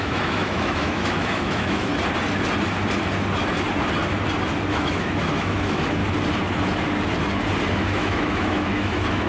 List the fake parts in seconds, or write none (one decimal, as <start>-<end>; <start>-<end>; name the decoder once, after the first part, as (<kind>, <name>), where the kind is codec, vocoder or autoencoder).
0.0-1.9 (autoencoder, DAC-VAE); 4.7-6.0; 7.7-9.3